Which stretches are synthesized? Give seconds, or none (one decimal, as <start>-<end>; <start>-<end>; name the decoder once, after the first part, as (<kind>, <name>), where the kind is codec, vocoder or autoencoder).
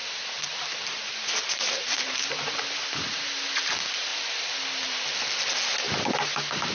0.0-2.6 (vocoder, BigVGAN v2)